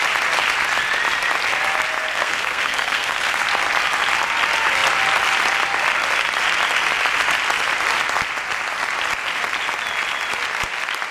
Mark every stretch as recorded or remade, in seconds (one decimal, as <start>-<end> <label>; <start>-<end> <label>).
0.0-2.1 recorded; 2.1-3.4 remade; 3.4-11.1 recorded